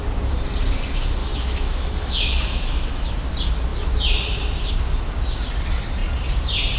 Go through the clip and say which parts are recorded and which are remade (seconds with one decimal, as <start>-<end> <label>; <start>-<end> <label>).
0.0-1.2 recorded; 1.2-3.1 remade; 3.1-6.8 recorded